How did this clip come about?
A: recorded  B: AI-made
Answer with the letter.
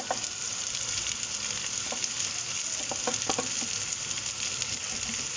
A